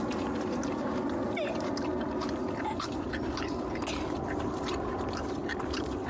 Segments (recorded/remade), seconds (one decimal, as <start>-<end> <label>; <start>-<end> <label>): 0.0-6.1 recorded